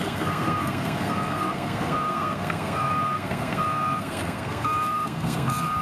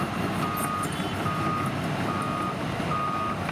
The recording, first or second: second